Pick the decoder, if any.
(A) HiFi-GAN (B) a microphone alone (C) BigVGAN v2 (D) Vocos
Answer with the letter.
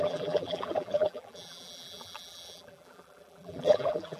C